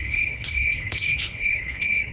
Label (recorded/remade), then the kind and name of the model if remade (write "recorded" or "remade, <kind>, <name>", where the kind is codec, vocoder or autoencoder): remade, codec, HILCodec